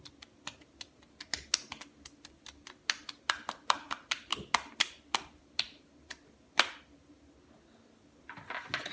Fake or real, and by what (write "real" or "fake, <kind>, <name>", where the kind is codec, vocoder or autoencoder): real